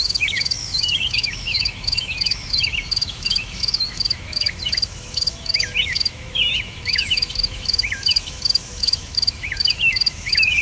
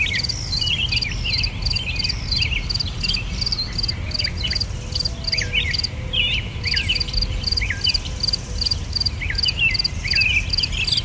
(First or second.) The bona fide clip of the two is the second